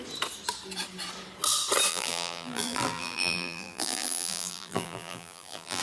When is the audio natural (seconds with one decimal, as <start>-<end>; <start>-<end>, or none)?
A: 0.0-1.9